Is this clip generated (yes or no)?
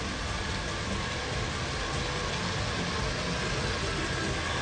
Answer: no